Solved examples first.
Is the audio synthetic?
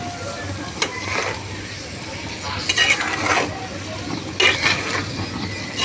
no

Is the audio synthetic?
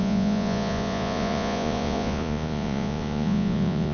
yes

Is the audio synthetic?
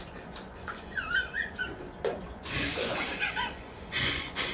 yes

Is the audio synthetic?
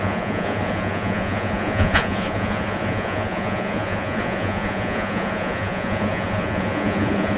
yes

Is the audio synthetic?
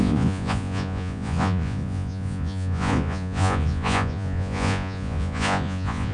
yes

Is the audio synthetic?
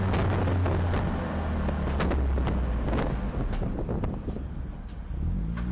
no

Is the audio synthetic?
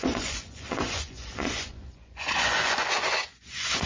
yes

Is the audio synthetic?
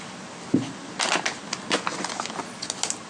no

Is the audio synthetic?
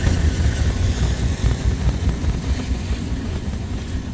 yes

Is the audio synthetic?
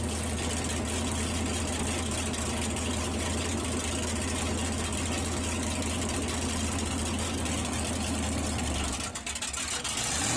no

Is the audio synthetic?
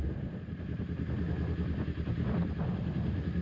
no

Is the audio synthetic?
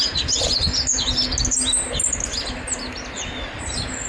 no